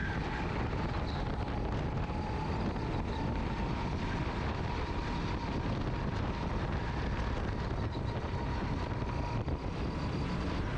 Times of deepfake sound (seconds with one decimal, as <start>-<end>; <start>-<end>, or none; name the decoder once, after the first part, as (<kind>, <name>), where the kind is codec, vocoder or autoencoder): none